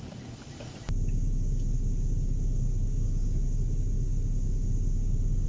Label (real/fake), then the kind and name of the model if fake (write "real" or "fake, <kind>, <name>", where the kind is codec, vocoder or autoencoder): real